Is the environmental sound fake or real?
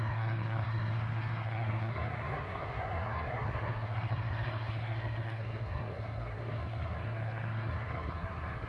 fake